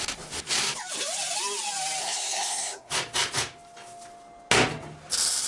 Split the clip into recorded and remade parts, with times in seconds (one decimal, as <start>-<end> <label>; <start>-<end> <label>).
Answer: 0.0-2.0 recorded; 2.0-2.9 remade; 2.9-5.5 recorded